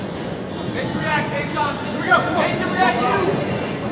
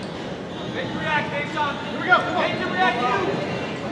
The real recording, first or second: second